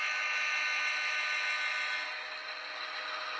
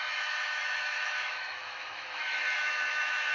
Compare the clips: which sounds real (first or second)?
first